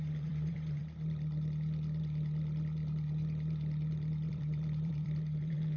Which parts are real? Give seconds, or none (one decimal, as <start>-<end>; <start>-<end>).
0.8-4.3